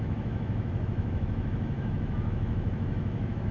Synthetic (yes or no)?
yes